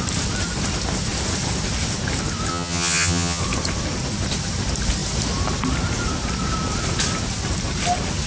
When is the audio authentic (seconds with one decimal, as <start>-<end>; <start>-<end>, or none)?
0.0-2.5; 3.4-8.3